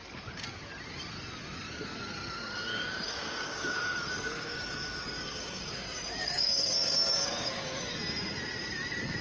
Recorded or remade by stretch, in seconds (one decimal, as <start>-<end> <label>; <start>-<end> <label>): 0.0-2.7 recorded; 2.7-7.8 remade; 7.8-9.2 recorded